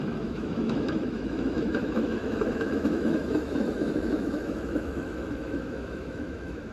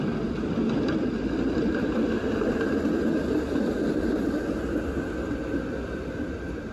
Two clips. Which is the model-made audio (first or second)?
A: first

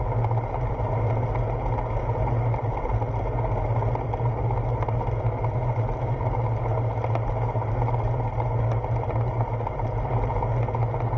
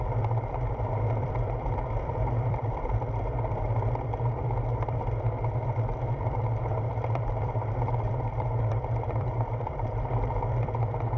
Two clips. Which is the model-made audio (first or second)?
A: second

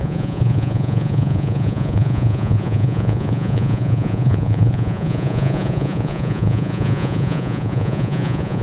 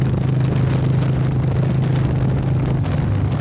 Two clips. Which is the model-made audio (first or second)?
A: first